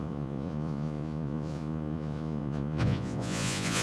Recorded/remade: remade